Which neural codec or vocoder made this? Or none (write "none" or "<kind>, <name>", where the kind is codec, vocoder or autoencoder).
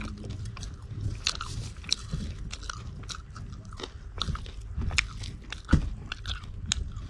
none